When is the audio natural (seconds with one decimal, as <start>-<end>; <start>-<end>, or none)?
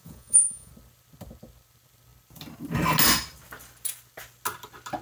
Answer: 0.7-5.0